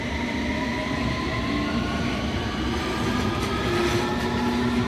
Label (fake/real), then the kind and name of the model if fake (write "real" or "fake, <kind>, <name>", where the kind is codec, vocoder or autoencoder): real